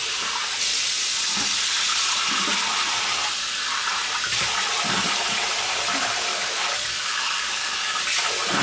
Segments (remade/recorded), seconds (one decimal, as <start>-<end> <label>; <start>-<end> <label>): 0.0-6.3 recorded; 6.3-8.0 remade; 8.0-8.6 recorded